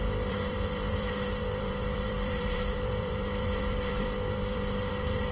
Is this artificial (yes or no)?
yes